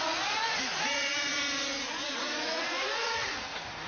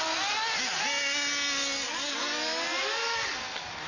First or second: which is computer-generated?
first